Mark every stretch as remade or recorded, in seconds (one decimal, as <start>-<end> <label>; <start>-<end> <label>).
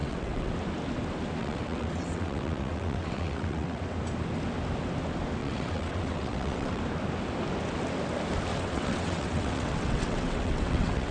0.0-0.5 remade; 0.5-1.4 recorded; 1.4-3.8 remade; 3.8-5.4 recorded; 5.4-6.8 remade; 6.8-8.5 recorded; 8.5-11.1 remade